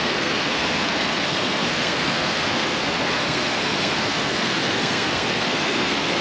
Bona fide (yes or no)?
no